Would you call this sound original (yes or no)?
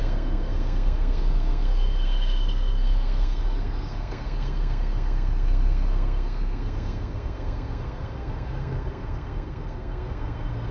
no